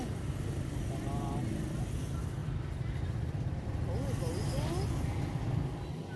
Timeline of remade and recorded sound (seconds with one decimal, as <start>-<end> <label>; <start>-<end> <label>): 0.0-6.2 recorded